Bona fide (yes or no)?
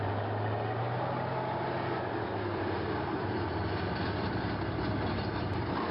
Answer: yes